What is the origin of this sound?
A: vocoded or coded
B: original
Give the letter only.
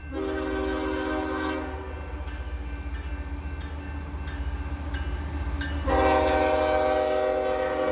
B